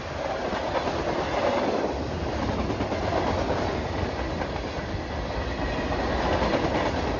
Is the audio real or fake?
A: real